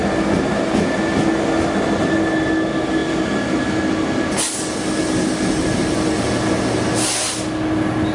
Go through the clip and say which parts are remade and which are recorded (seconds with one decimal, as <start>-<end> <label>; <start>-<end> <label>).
0.0-8.1 recorded